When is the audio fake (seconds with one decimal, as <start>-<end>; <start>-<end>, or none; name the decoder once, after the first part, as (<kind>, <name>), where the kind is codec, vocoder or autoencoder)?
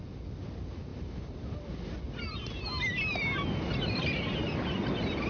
none